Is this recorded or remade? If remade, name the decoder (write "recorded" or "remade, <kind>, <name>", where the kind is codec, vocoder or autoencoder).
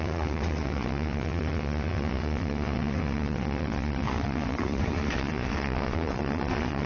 remade, vocoder, WaveNeXt